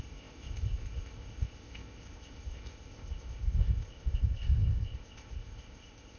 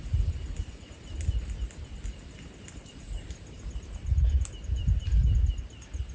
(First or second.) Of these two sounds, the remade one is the first